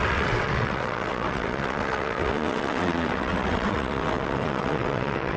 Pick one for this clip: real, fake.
fake